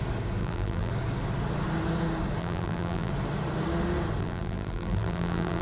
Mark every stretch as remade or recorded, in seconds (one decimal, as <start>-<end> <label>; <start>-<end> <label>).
0.0-0.4 recorded; 0.4-0.9 remade; 0.9-2.4 recorded; 2.4-3.1 remade; 3.1-4.2 recorded; 4.2-5.6 remade